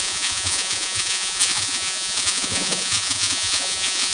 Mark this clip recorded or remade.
remade